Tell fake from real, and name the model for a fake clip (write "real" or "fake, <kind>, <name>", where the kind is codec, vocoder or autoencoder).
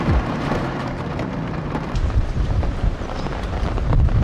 fake, vocoder, BigVGAN v2